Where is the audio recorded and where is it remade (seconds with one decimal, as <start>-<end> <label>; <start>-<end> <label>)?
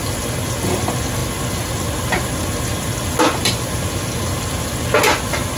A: 0.0-5.6 recorded